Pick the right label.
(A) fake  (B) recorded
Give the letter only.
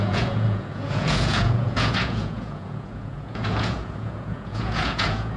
A